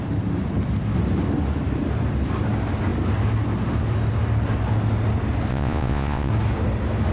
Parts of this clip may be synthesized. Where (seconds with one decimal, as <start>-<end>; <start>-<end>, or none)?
5.5-6.3

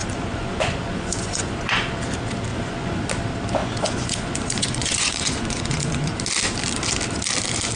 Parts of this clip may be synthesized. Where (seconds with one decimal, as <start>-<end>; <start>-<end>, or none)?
0.0-2.0; 2.5-3.0; 3.6-6.2

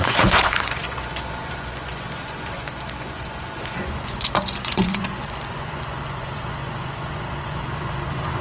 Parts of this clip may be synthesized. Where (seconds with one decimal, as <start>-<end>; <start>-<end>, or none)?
0.0-8.4

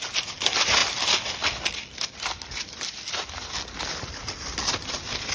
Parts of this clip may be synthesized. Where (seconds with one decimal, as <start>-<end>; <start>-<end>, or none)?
none

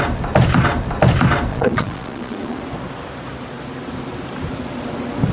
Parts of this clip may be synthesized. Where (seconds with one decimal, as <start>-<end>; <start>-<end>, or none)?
1.5-2.6

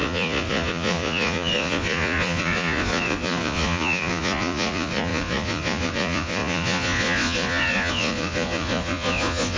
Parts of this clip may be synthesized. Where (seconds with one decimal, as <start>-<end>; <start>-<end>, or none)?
0.0-9.6

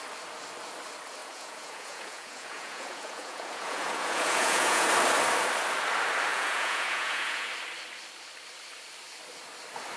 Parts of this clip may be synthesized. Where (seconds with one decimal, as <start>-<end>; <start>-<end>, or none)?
1.2-4.9; 6.3-7.5